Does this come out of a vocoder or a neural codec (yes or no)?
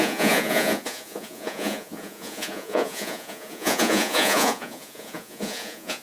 yes